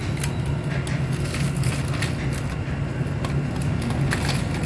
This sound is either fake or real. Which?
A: real